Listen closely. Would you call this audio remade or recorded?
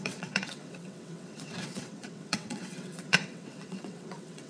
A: remade